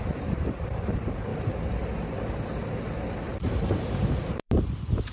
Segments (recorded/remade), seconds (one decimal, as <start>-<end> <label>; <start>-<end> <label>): 0.0-1.3 remade; 1.3-3.7 recorded; 3.7-5.1 remade